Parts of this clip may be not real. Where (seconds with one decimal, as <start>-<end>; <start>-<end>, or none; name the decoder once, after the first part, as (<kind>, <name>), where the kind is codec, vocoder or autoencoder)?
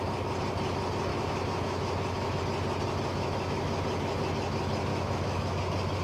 1.1-2.4 (autoencoder, DAC-VAE); 3.1-3.7; 4.9-5.6